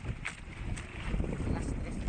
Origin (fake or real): real